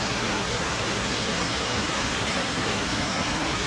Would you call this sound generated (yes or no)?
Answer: yes